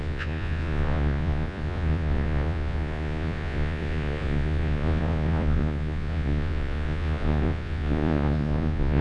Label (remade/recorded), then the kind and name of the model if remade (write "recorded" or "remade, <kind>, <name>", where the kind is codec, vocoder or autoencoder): remade, vocoder, Vocos